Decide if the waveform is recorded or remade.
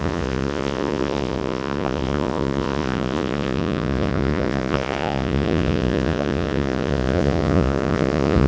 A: remade